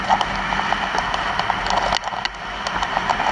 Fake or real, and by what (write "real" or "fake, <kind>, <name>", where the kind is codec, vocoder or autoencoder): real